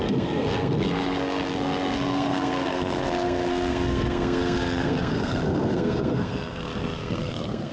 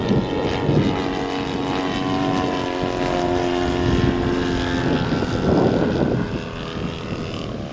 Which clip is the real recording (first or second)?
second